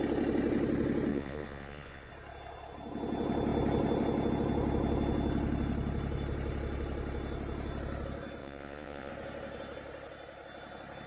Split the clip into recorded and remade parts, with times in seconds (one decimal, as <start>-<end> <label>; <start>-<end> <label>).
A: 0.0-1.1 recorded; 1.1-2.1 remade; 2.1-8.4 recorded; 8.4-9.1 remade; 9.1-11.1 recorded